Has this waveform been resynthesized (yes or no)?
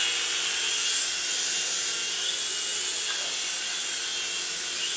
no